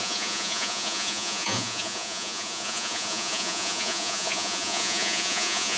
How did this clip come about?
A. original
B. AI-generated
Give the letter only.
B